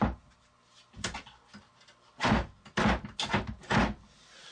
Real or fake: real